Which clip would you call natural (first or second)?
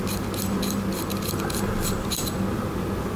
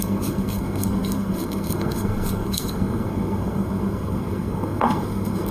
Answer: first